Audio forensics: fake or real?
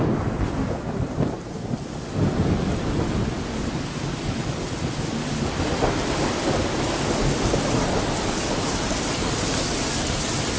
real